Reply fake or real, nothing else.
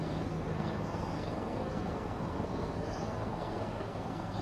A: fake